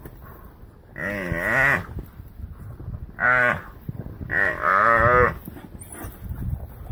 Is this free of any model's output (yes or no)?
yes